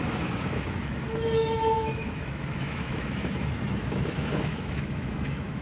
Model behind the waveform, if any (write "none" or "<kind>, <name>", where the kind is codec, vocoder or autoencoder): autoencoder, DAC-VAE